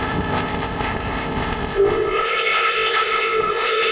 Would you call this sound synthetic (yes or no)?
yes